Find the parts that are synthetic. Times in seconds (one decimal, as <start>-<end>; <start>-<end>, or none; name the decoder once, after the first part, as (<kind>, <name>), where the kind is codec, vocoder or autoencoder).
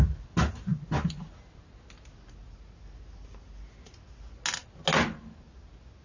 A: none